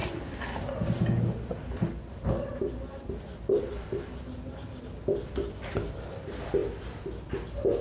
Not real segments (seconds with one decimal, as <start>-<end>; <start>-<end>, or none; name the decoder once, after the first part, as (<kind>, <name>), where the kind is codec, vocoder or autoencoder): none